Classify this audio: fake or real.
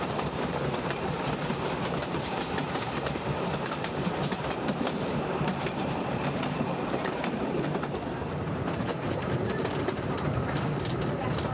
fake